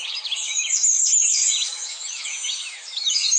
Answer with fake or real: fake